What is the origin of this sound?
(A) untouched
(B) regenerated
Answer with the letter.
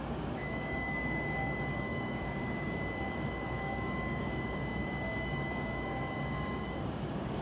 B